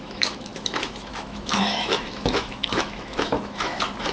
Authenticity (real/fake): fake